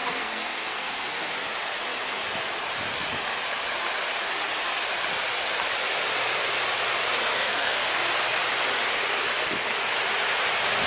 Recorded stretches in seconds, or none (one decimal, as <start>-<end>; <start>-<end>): 1.3-7.3; 7.9-10.9